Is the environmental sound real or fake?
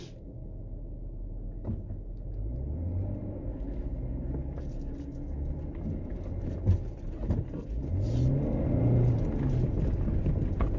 real